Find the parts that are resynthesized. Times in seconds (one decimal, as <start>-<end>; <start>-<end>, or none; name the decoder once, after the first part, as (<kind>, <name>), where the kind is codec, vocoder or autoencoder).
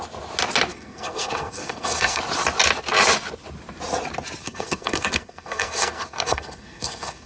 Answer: 0.7-2.2 (codec, SNAC); 4.4-7.3